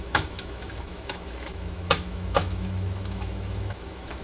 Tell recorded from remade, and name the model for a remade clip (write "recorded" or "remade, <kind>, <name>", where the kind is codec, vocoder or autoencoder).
remade, autoencoder, DAC-VAE